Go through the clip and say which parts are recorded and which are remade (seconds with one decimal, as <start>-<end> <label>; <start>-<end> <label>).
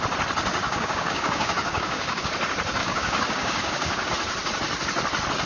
0.0-0.6 recorded; 0.6-2.3 remade; 2.3-2.8 recorded; 2.8-4.1 remade; 4.1-5.5 recorded